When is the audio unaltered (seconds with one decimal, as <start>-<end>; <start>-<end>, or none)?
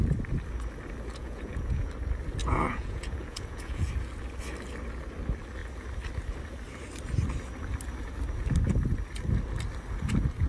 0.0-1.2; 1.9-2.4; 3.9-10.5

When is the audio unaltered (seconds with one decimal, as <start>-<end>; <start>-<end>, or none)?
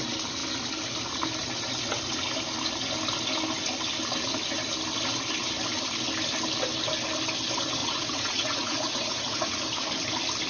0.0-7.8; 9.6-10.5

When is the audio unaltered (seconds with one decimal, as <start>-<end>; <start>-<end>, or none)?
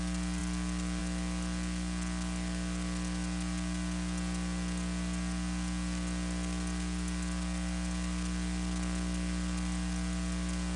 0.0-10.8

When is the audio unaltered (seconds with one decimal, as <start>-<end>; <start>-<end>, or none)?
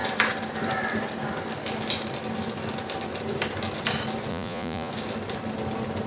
0.0-4.3; 4.9-6.1